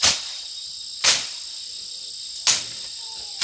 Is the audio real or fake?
real